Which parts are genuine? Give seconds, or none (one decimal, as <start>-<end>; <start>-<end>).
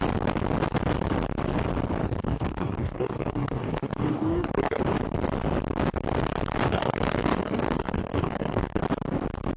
0.0-2.0; 4.8-6.7; 8.8-9.6